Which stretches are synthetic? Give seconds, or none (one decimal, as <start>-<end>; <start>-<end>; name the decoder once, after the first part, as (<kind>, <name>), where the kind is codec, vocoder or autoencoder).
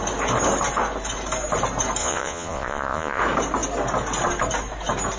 2.0-3.2 (vocoder, Vocos)